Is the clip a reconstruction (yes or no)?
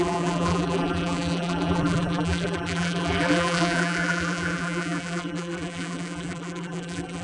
yes